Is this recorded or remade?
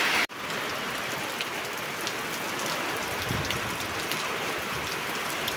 recorded